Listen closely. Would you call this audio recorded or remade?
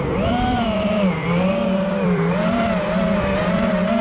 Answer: remade